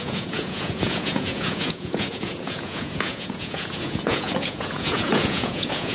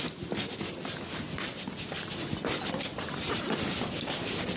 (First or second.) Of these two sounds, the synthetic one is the first